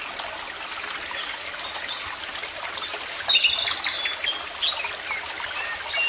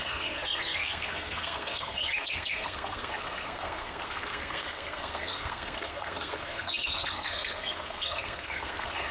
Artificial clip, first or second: second